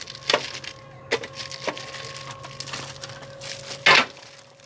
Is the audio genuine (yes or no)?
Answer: yes